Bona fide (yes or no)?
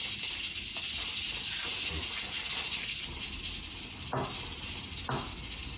yes